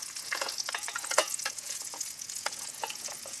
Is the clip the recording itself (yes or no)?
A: no